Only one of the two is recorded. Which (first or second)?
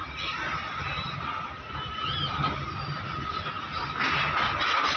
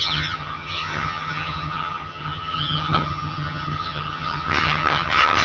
first